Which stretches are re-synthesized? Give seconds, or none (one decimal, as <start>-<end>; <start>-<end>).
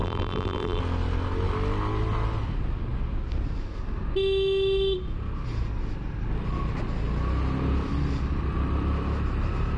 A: 0.0-0.8